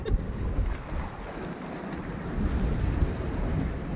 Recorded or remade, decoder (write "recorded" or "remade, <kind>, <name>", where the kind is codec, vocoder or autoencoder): recorded